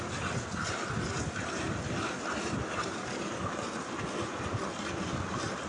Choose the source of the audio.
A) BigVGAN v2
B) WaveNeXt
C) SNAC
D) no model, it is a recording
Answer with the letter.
D